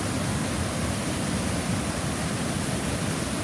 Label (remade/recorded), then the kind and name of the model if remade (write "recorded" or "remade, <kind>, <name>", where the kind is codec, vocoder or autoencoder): recorded